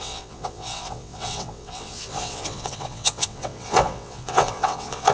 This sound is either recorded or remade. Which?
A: remade